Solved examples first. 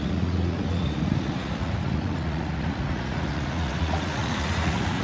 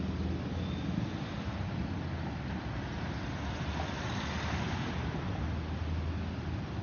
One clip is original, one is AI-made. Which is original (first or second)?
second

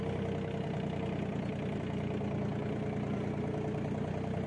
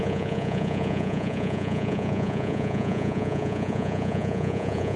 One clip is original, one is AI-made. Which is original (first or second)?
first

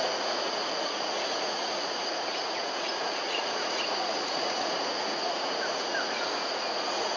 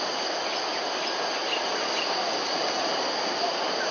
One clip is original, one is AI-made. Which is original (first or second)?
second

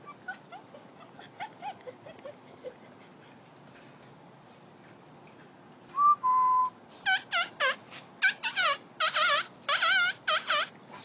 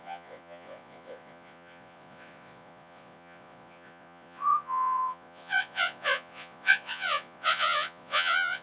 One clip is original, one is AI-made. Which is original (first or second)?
first